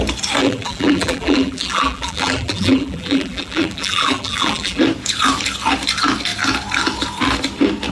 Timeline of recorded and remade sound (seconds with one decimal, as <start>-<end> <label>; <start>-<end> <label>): 0.0-0.4 recorded; 0.4-4.8 remade; 4.8-7.9 recorded

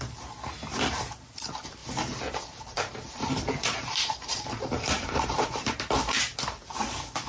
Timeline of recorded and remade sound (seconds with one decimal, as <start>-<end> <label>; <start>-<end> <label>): 0.0-1.8 recorded; 1.8-6.2 remade; 6.2-7.3 recorded

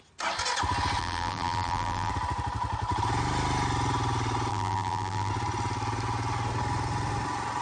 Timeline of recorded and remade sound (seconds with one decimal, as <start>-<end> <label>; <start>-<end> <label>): 0.0-1.0 recorded; 1.0-2.1 remade; 2.1-4.5 recorded; 4.5-5.3 remade; 5.3-7.6 recorded

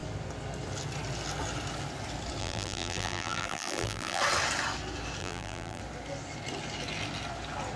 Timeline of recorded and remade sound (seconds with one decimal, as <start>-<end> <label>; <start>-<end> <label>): 0.0-2.4 recorded; 2.4-4.2 remade; 4.2-5.2 recorded; 5.2-5.8 remade; 5.8-7.8 recorded

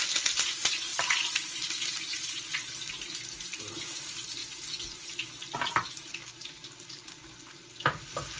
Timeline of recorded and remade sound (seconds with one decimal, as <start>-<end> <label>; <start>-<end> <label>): 0.0-8.4 recorded

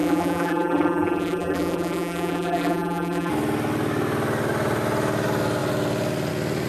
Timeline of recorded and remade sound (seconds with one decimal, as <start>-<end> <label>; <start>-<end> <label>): 0.0-3.3 remade; 3.3-6.7 recorded

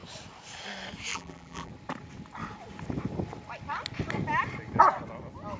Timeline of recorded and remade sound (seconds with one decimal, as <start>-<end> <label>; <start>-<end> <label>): 0.0-1.1 recorded; 1.1-1.7 remade; 1.7-5.6 recorded

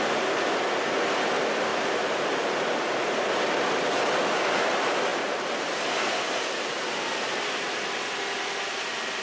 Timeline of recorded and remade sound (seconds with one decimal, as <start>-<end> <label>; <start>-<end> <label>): 0.0-1.7 recorded; 1.7-2.3 remade; 2.3-9.2 recorded